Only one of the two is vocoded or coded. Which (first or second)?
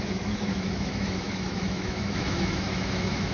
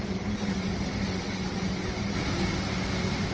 first